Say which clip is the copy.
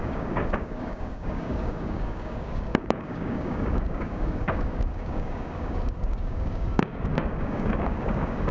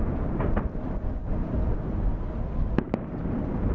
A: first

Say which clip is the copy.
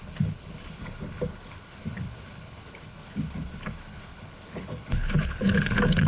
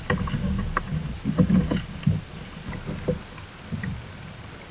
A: first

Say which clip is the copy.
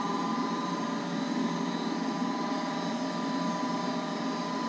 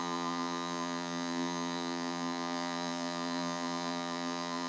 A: second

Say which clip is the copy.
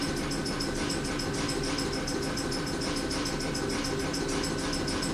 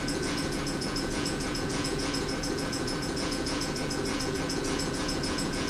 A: second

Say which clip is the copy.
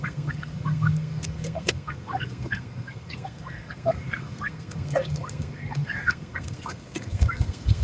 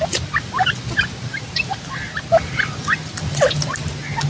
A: first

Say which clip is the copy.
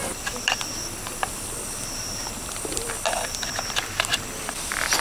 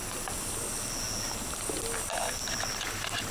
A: first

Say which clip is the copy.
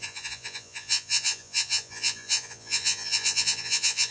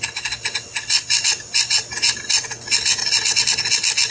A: first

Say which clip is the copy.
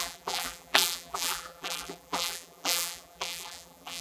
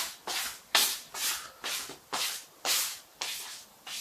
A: first